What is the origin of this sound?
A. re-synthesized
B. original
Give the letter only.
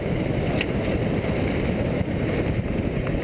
B